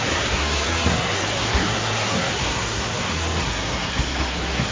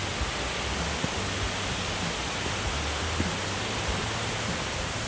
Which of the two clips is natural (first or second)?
second